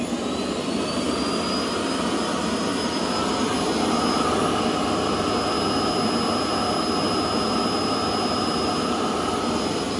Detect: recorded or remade recorded